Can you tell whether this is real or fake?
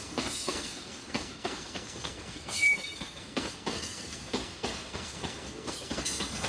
fake